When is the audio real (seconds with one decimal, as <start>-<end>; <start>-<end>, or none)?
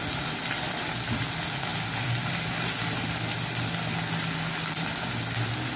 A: 0.0-5.8